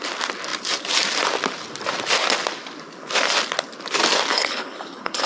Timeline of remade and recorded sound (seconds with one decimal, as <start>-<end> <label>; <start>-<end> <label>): 0.0-4.3 recorded; 4.3-5.3 remade